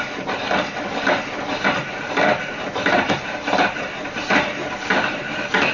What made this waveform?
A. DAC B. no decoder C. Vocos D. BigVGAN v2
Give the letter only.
B